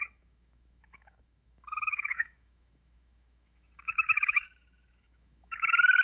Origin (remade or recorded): remade